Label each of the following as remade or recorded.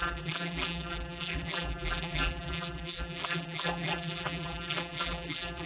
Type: remade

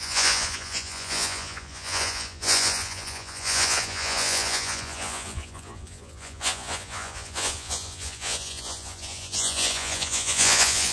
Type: remade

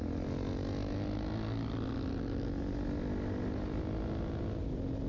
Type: recorded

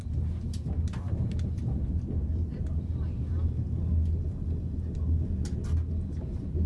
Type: recorded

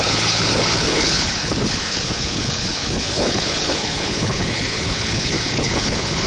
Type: remade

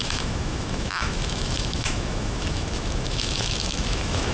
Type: remade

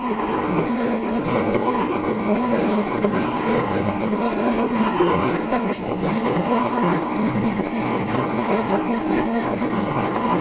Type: remade